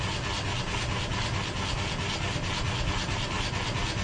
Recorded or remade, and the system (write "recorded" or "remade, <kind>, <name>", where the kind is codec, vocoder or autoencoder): recorded